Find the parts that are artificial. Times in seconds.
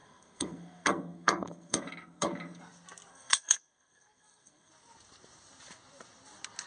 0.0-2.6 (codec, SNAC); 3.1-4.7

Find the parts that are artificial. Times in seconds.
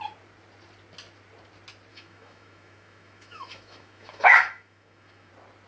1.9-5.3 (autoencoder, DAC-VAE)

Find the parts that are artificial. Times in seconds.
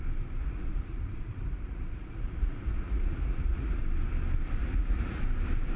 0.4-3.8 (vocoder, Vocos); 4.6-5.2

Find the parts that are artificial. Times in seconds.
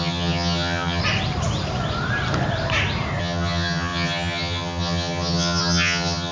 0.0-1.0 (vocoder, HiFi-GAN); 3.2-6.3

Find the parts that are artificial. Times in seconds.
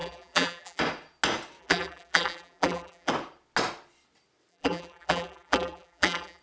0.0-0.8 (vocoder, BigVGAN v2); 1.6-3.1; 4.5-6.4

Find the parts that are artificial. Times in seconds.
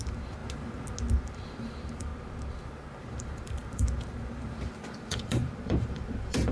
0.0-0.4 (vocoder, BigVGAN v2); 1.1-2.1; 3.0-6.5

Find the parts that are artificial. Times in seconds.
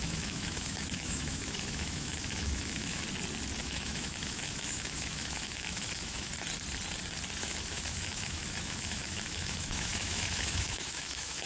0.0-3.0 (autoencoder, DAC-VAE); 3.6-6.3; 7.4-11.5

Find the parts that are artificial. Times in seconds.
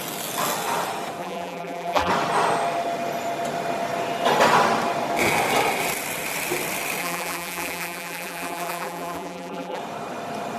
1.2-2.1 (vocoder, BigVGAN v2); 7.0-9.8